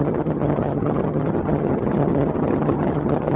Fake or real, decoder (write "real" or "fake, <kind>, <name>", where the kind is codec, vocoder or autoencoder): fake, vocoder, HiFi-GAN